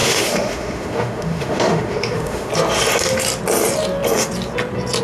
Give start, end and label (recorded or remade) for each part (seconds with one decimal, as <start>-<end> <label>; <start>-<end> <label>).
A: 0.0-2.5 remade; 2.5-5.0 recorded